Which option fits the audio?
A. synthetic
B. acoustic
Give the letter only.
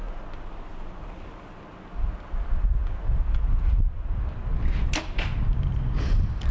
B